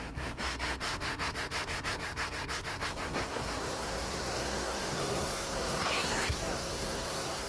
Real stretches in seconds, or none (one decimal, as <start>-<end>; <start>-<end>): none